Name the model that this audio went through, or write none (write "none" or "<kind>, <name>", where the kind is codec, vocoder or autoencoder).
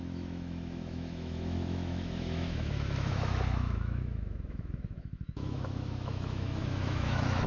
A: autoencoder, DAC-VAE